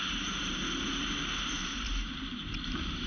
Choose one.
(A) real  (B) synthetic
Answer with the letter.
B